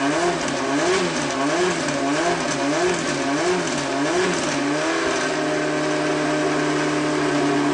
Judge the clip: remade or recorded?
recorded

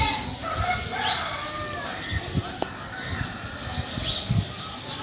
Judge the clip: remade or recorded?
recorded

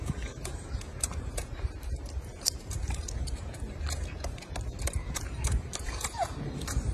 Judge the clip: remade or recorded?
remade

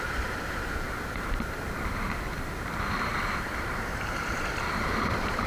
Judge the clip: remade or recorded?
remade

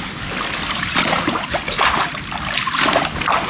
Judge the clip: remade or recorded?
recorded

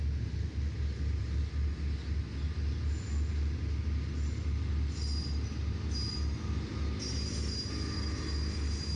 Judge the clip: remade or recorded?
recorded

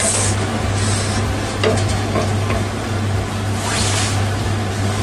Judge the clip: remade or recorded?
recorded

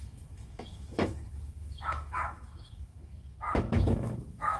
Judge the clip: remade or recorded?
remade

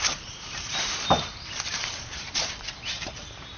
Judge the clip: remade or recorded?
remade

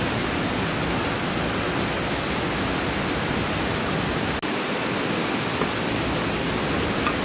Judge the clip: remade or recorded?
recorded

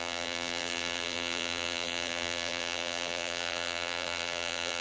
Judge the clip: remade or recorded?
remade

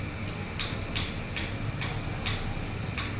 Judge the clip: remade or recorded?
recorded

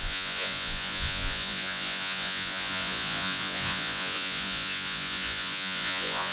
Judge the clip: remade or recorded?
remade